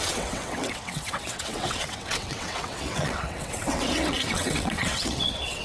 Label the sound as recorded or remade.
remade